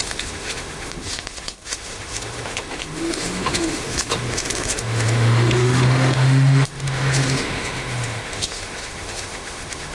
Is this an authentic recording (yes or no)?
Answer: no